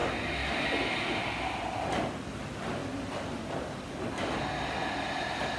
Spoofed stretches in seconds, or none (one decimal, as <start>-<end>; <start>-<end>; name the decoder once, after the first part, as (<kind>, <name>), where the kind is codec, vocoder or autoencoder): none

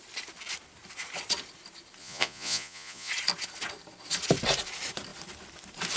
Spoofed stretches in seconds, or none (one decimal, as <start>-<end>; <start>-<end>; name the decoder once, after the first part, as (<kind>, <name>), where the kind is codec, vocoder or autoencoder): 2.0-3.1 (vocoder, Vocos)

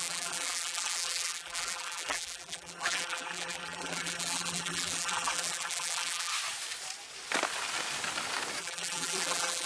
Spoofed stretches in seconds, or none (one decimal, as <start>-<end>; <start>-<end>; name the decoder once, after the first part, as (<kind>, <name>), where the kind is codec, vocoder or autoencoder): 0.0-6.3 (vocoder, BigVGAN v2); 8.6-9.7

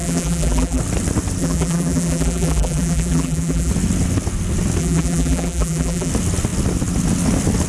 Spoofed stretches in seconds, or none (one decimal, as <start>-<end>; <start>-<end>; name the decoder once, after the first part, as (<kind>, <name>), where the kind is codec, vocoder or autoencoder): 0.0-0.8 (vocoder, BigVGAN v2); 1.4-3.7; 4.8-6.1

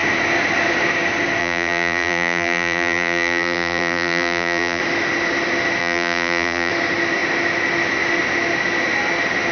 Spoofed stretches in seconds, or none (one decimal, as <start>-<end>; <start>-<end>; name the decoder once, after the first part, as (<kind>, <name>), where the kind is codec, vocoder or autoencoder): 1.4-4.8 (vocoder, BigVGAN v2); 5.8-6.7

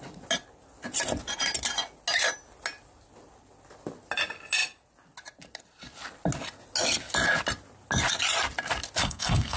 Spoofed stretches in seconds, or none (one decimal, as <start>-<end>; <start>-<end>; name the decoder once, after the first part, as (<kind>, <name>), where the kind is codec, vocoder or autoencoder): 9.0-9.6 (codec, SNAC)

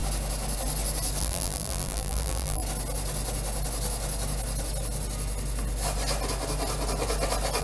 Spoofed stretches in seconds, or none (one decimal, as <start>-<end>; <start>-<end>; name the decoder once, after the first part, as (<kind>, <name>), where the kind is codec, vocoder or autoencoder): 1.2-2.6 (vocoder, BigVGAN v2)